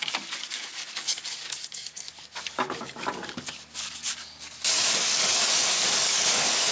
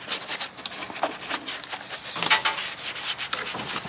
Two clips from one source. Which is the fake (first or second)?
first